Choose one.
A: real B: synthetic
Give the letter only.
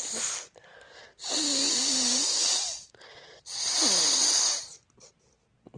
A